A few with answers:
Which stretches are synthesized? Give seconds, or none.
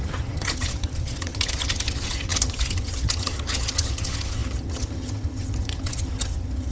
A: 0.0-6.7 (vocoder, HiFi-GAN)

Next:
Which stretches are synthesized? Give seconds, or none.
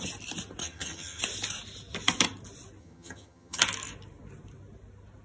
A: 0.6-1.2 (vocoder, HiFi-GAN); 2.8-3.6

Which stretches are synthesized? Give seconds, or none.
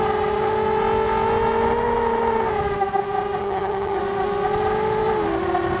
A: 3.4-4.0 (vocoder, HiFi-GAN)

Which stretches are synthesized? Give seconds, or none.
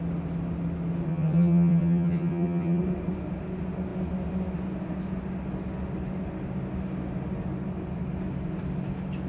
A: 1.1-2.8 (vocoder, HiFi-GAN)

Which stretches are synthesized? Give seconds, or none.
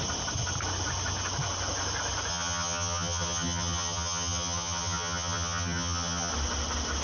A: 2.3-6.3 (vocoder, HiFi-GAN)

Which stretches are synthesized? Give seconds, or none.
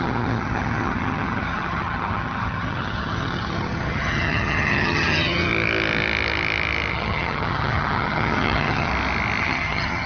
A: 0.0-5.5 (vocoder, HiFi-GAN); 6.9-8.9; 9.4-10.1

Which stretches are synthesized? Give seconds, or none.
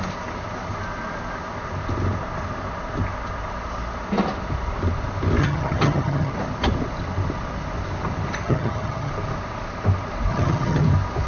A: 5.4-6.3 (vocoder, HiFi-GAN); 8.4-9.1; 10.3-10.8